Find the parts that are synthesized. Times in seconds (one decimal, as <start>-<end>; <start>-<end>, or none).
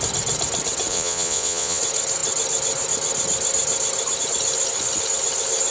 0.9-1.8